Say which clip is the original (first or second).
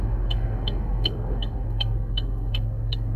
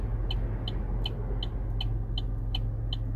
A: second